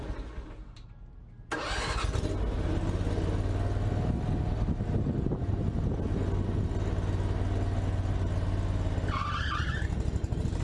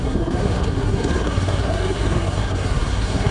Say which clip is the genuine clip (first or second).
first